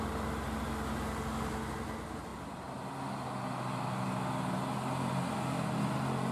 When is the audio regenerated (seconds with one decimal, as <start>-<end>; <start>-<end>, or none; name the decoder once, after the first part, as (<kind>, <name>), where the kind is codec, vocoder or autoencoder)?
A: none